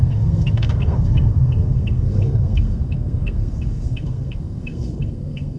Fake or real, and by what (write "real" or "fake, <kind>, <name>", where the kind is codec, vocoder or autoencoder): fake, codec, SNAC